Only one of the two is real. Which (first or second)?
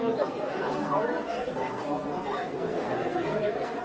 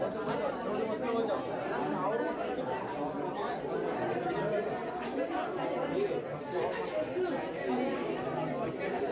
second